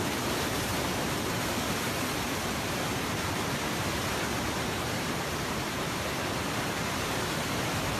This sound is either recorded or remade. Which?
remade